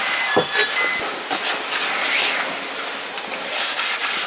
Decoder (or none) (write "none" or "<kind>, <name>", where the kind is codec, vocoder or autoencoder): none